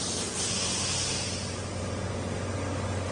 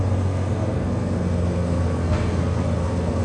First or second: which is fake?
second